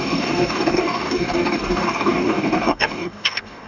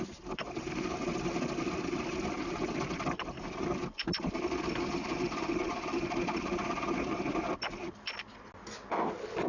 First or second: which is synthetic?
first